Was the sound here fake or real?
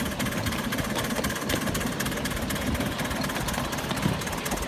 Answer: real